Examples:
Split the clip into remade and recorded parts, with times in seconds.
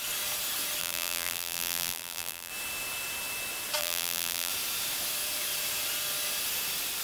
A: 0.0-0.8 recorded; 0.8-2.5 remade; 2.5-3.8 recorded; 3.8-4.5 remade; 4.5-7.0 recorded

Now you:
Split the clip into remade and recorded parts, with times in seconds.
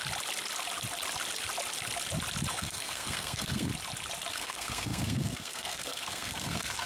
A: 0.0-2.5 recorded; 2.5-3.7 remade; 3.7-4.3 recorded; 4.3-6.9 remade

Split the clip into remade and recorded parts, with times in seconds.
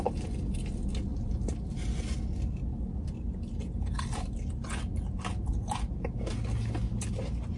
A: 0.0-7.6 recorded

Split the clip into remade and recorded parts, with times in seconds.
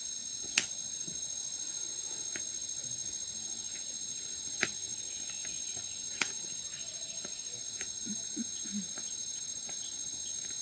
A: 0.0-9.2 recorded; 9.2-10.1 remade; 10.1-10.6 recorded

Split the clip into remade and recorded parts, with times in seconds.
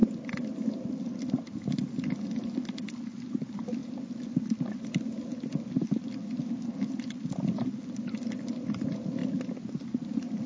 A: 0.0-1.7 remade; 1.7-10.5 recorded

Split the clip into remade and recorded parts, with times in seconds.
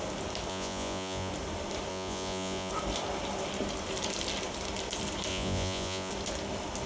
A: 0.0-0.5 recorded; 0.5-1.3 remade; 1.3-1.9 recorded; 1.9-2.7 remade; 2.7-5.3 recorded; 5.3-6.1 remade; 6.1-6.9 recorded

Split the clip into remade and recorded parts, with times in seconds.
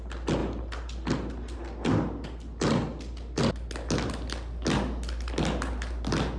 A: 0.0-6.4 recorded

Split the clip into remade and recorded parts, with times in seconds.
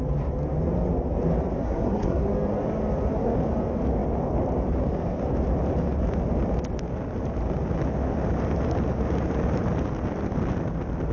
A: 0.0-1.6 recorded; 1.6-2.2 remade; 2.2-11.1 recorded